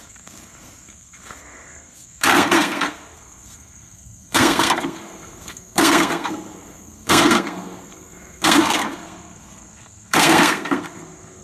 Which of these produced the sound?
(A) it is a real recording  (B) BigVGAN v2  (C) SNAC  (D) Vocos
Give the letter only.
C